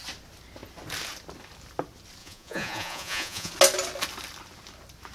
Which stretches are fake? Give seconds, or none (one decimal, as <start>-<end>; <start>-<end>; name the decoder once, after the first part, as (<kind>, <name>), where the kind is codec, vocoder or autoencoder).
2.2-3.5 (vocoder, Vocos)